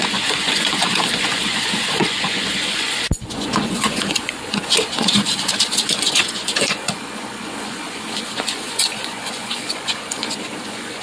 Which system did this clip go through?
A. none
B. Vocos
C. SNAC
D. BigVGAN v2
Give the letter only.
B